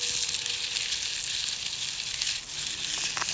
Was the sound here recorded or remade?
recorded